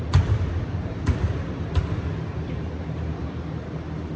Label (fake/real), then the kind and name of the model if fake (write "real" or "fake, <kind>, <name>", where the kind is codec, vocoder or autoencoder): real